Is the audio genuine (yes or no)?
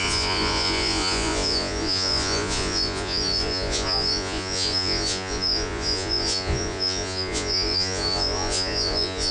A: no